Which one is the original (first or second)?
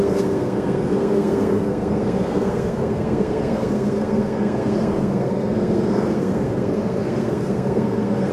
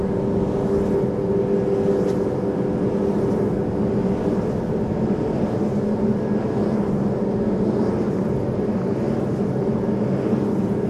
second